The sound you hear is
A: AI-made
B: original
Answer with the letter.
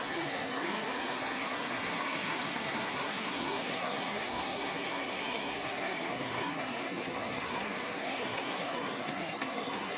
A